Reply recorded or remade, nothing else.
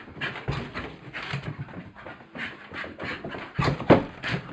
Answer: recorded